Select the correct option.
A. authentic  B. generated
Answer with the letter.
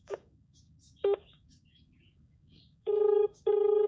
B